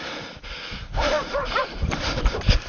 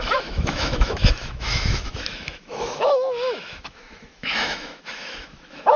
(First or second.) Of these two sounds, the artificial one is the second